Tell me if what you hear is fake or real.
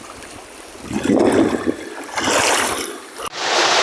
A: real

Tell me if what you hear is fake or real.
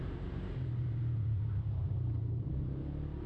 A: fake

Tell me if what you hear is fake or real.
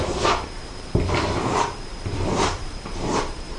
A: fake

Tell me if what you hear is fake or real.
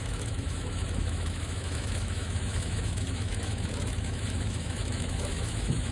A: fake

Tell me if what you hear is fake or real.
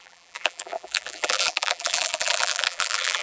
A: fake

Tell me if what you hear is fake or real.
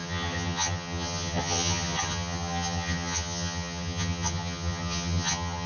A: fake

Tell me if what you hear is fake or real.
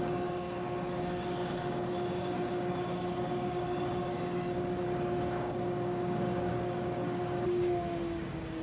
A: fake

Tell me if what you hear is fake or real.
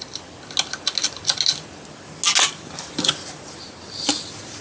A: real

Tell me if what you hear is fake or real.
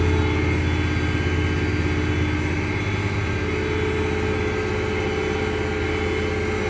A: real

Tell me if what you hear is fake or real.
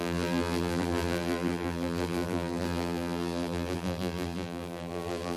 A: fake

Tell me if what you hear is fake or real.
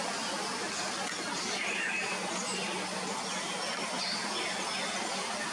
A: real